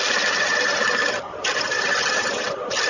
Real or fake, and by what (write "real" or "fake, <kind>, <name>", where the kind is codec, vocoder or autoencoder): real